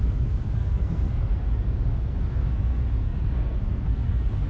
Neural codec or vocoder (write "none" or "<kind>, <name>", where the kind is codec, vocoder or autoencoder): codec, SNAC